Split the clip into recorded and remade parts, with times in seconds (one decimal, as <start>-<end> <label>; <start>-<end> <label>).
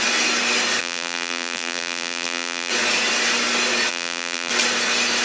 0.0-0.8 recorded; 0.8-2.7 remade; 2.7-3.9 recorded; 3.9-4.5 remade; 4.5-5.2 recorded